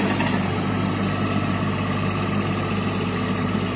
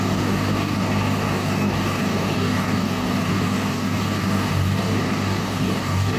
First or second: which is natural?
first